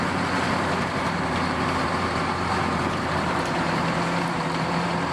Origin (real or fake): fake